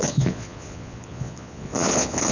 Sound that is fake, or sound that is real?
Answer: fake